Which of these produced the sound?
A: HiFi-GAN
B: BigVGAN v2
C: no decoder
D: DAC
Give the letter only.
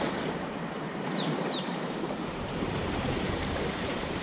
B